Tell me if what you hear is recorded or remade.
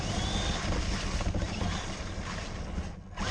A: recorded